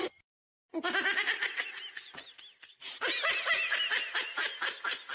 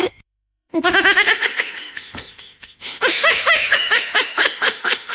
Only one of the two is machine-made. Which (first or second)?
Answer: second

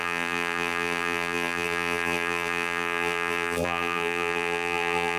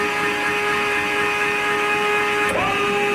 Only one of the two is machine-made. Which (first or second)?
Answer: first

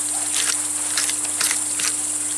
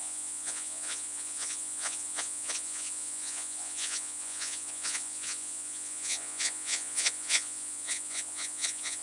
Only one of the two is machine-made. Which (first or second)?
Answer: second